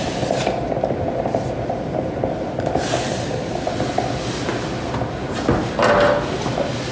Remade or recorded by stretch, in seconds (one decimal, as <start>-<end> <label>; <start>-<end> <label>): 0.0-6.9 recorded